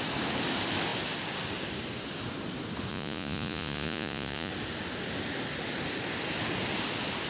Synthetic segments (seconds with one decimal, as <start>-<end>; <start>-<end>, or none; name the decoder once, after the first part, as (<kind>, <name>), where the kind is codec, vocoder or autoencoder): 2.9-4.5 (vocoder, Vocos)